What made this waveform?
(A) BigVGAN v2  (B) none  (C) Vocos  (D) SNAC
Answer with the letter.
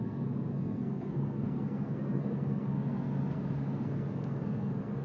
D